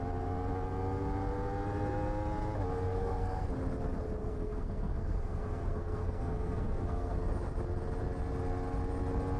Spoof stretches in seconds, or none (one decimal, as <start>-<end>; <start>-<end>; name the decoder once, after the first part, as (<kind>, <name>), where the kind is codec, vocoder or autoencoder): 2.9-3.5 (codec, SNAC); 4.2-7.2

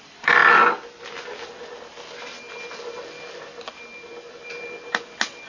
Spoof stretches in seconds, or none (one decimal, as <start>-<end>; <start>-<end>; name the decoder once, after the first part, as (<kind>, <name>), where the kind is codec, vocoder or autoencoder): none

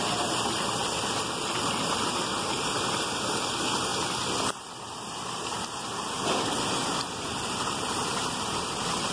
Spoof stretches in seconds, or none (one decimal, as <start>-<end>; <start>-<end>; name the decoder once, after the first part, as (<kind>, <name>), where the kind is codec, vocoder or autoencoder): 0.8-1.5 (vocoder, BigVGAN v2); 3.9-4.5; 6.8-8.2

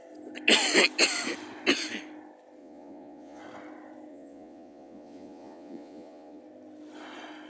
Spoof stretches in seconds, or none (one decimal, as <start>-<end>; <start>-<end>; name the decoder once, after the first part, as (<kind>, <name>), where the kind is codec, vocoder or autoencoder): 2.6-3.4 (vocoder, Vocos); 4.1-6.4